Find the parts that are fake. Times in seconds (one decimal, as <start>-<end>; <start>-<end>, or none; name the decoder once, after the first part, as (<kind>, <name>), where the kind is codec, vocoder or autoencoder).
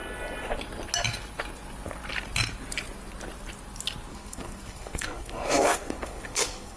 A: 4.1-6.8 (codec, SNAC)